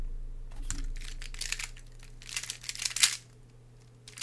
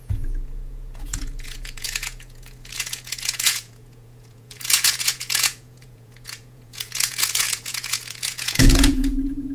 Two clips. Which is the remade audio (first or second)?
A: second